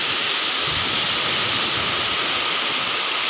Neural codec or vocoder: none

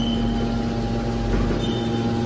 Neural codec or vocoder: none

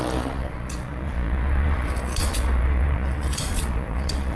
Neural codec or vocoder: vocoder, Vocos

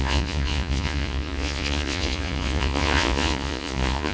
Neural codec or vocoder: vocoder, Vocos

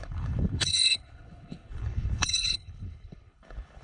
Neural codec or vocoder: codec, HILCodec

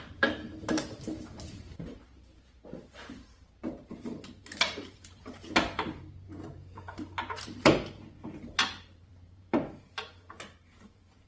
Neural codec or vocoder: vocoder, BigVGAN v2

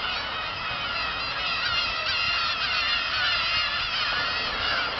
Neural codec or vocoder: none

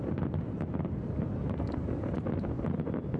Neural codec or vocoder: none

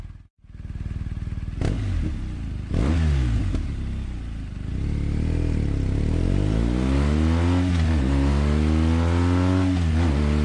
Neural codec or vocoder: none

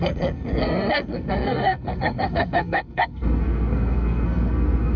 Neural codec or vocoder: codec, SNAC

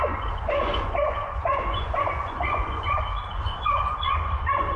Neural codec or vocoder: vocoder, Vocos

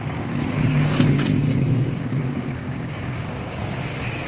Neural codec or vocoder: codec, DAC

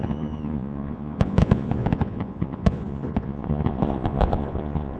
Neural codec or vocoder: vocoder, Vocos